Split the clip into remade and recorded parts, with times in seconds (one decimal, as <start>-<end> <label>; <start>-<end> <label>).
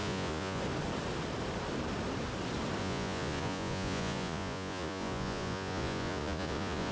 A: 0.0-0.6 remade; 0.6-2.8 recorded; 2.8-6.9 remade